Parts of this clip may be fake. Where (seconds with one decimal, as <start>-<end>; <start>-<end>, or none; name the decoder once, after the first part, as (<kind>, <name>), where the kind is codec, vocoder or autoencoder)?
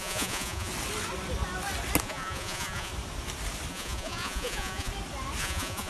0.0-0.7 (vocoder, Vocos); 2.0-2.9; 3.7-4.9; 5.4-5.9